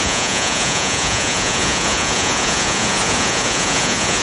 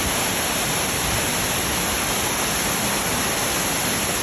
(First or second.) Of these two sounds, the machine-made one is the first